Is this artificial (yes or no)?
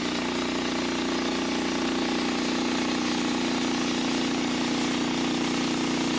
no